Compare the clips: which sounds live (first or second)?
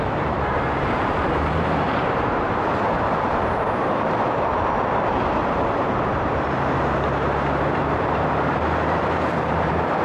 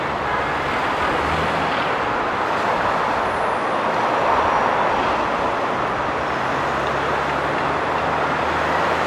second